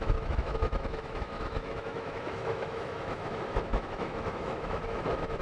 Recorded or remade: remade